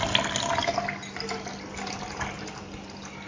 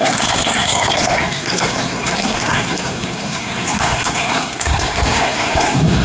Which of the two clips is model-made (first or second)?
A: second